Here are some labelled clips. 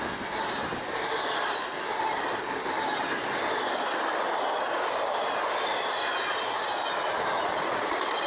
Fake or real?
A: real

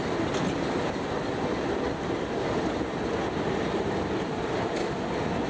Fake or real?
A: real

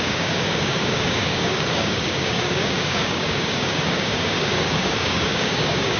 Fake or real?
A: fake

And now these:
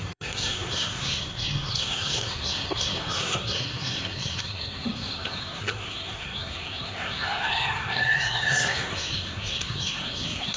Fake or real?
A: fake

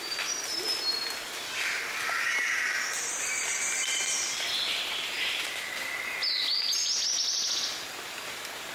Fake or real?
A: real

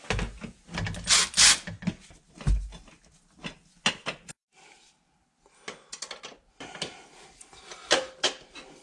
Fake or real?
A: real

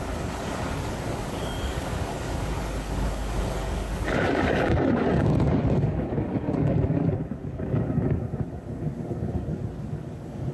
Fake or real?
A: fake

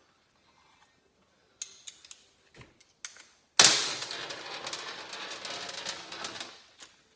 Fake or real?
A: real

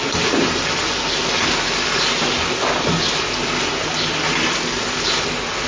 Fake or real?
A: real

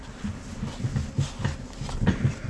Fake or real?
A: real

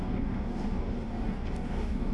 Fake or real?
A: fake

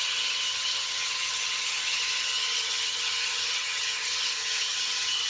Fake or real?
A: fake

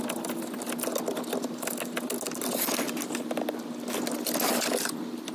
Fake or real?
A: real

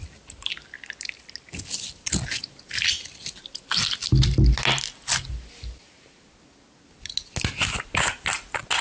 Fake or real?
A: real